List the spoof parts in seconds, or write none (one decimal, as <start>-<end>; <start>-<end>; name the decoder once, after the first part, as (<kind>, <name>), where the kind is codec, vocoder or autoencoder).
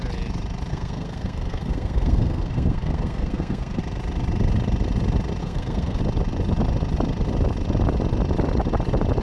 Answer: 0.7-3.8 (codec, SNAC); 5.4-6.0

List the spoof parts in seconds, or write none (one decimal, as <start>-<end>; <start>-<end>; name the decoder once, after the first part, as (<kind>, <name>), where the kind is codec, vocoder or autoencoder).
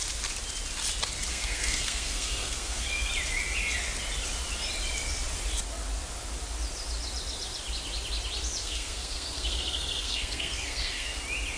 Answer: 1.3-3.1 (codec, SNAC); 8.6-11.2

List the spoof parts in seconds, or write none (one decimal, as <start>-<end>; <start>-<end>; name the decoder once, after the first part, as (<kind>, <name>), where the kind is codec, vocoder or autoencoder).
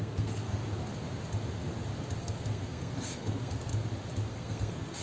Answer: 0.0-0.6 (codec, SNAC); 2.2-3.7; 4.3-5.0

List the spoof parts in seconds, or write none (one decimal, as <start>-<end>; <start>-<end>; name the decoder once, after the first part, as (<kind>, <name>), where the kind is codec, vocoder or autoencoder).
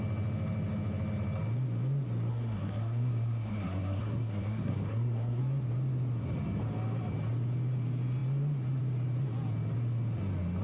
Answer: 2.3-5.4 (codec, SNAC)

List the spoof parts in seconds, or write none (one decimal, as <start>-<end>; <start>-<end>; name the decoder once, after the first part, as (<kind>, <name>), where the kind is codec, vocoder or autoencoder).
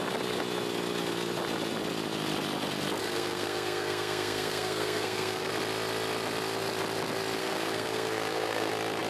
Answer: 3.0-5.5 (codec, SNAC); 7.4-8.7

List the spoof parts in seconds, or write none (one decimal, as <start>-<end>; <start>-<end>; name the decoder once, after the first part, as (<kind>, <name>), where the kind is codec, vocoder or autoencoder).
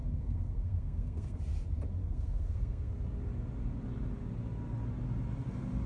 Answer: 0.0-1.4 (codec, SNAC); 2.0-2.9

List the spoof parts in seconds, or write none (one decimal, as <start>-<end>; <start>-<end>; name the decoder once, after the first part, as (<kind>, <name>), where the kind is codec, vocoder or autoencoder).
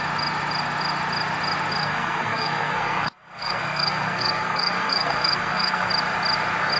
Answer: 1.8-5.9 (codec, SNAC)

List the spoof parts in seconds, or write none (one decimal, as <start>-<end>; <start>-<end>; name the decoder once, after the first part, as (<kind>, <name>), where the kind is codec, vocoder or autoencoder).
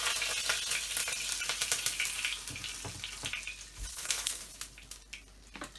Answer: 3.9-4.4 (codec, SNAC)